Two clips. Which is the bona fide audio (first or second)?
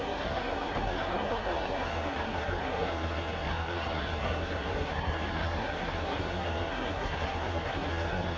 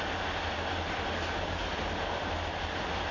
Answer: second